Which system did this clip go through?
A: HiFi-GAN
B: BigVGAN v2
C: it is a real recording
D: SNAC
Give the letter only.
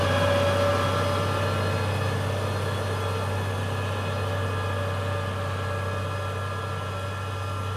C